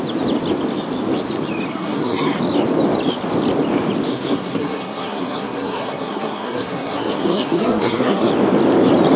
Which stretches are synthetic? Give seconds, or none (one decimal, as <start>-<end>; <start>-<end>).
1.7-2.4; 4.1-8.3